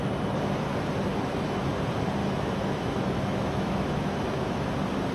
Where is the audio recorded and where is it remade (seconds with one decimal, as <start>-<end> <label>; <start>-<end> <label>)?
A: 0.0-1.1 recorded; 1.1-1.7 remade; 1.7-2.2 recorded; 2.2-4.6 remade; 4.6-5.1 recorded